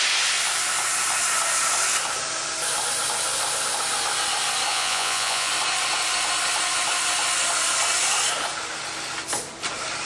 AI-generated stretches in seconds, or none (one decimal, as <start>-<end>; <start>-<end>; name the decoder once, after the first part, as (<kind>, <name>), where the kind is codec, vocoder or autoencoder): 4.7-5.5 (vocoder, Vocos)